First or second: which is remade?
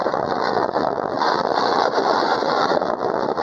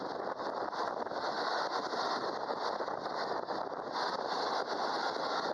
first